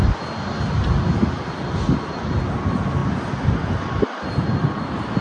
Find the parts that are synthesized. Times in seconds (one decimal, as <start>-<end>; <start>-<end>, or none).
none